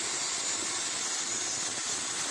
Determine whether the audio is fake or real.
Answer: real